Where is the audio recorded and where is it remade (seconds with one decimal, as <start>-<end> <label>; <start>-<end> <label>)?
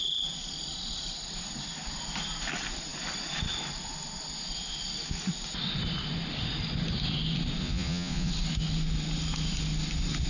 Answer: 0.0-7.6 recorded; 7.6-8.3 remade; 8.3-10.3 recorded